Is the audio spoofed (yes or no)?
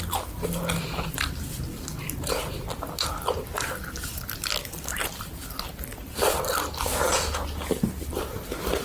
no